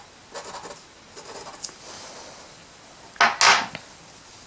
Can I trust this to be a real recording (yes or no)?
yes